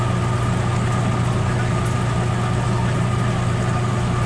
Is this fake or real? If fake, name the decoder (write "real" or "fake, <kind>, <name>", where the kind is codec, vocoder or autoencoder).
real